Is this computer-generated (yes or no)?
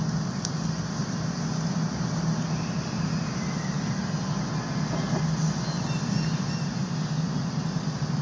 no